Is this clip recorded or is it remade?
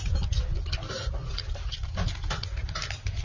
recorded